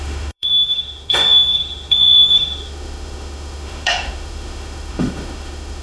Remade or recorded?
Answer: remade